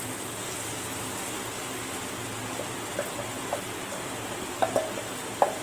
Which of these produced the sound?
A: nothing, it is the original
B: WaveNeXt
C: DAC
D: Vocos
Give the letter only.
A